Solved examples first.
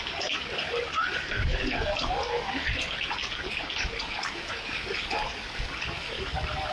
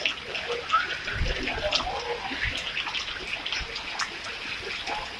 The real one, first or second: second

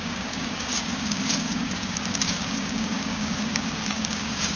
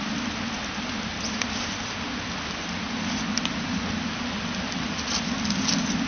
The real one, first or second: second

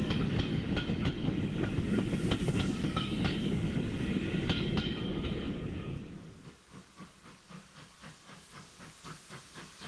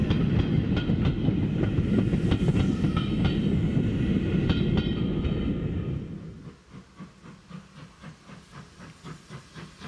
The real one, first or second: second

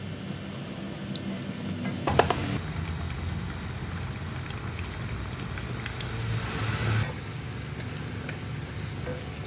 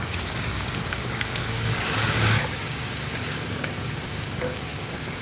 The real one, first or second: first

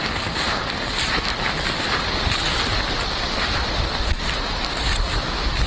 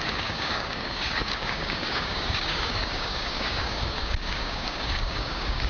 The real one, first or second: first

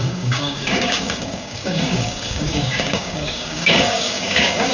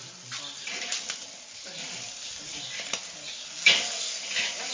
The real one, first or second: second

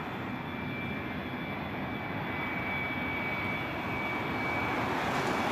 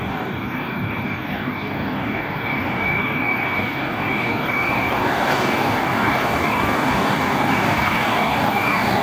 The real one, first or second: first